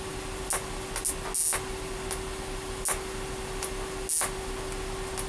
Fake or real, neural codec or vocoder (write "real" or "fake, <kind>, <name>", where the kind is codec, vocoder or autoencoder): real